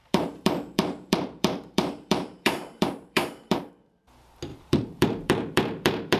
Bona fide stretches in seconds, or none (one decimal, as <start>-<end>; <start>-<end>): 3.7-4.5